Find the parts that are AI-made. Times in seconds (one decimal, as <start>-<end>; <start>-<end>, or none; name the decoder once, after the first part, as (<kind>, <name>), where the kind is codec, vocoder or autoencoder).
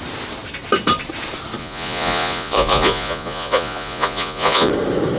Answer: 1.6-4.7 (vocoder, Vocos)